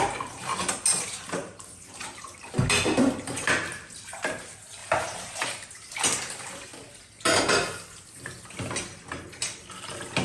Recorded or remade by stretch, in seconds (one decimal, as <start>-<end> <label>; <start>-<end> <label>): 0.0-0.9 recorded; 0.9-2.5 remade; 2.5-4.8 recorded; 4.8-6.0 remade; 6.0-10.2 recorded